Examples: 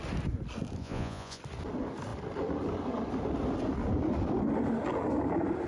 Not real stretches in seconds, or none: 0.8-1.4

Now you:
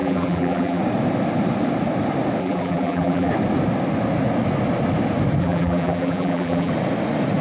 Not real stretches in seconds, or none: 0.0-0.8; 2.4-3.3; 5.4-6.7

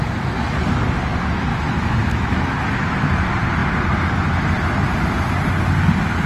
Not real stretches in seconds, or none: 1.5-3.2

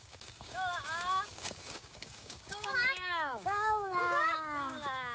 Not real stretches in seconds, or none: 0.0-5.1

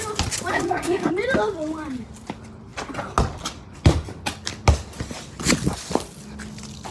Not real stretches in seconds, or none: 0.5-1.1

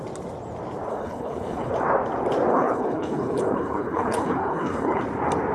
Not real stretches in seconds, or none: 0.9-1.7; 2.5-5.0